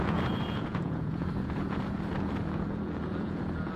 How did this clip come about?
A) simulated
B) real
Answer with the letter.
A